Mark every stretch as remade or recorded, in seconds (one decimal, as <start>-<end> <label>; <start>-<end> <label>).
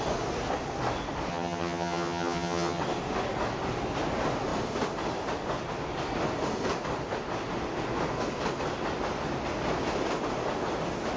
0.0-1.3 recorded; 1.3-2.8 remade; 2.8-11.2 recorded